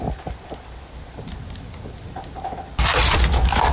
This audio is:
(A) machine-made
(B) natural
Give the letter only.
B